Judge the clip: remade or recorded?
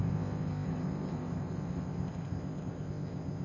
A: remade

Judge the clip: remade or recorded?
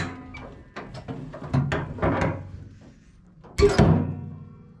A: recorded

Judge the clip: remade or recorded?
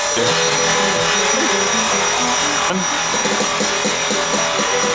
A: recorded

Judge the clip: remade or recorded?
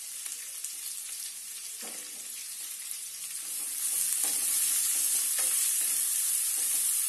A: recorded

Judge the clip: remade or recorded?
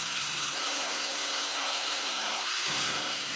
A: remade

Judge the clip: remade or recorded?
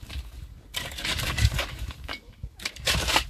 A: remade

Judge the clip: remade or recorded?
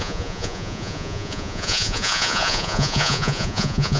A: remade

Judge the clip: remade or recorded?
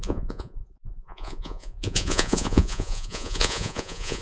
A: remade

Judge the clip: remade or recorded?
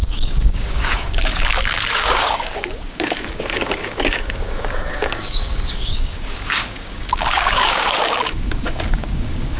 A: remade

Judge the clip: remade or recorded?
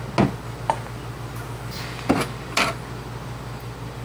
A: recorded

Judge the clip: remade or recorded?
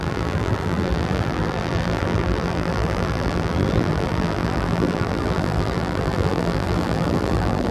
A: remade